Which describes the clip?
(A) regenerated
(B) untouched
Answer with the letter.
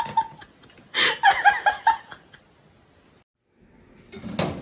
B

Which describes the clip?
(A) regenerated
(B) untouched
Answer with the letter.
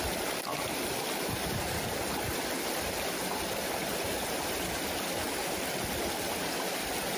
B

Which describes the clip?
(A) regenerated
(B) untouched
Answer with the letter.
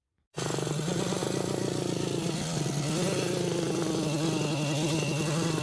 B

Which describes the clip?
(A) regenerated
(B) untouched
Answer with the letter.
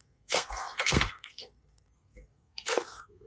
A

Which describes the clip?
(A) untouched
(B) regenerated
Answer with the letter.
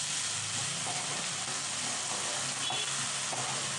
A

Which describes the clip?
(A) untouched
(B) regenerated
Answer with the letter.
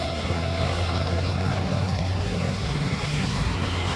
B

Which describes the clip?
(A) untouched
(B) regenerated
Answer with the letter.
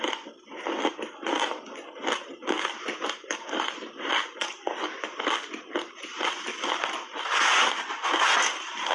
A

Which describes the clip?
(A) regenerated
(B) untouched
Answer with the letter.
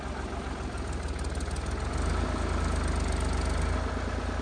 B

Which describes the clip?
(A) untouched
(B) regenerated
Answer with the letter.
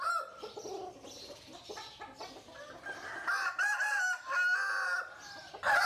A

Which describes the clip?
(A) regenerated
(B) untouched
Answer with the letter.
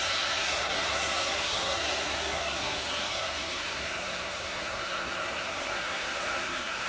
A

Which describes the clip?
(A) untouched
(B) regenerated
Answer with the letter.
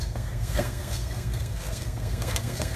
B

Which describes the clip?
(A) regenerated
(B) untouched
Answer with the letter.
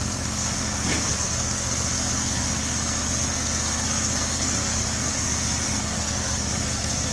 A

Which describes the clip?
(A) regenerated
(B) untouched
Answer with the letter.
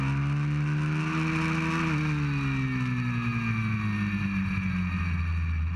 B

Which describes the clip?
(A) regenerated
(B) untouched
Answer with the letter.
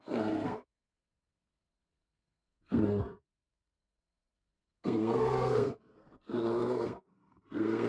A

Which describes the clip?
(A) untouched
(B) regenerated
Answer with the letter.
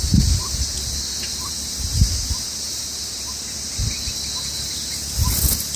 A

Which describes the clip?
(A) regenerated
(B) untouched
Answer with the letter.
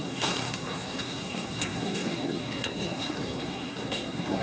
A